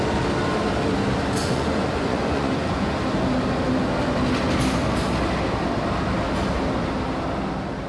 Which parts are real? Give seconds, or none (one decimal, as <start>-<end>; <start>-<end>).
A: 0.0-1.4; 2.9-7.9